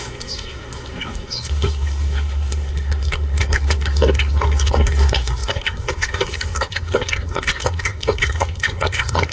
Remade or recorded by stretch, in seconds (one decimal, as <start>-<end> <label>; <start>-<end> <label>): 0.0-9.3 remade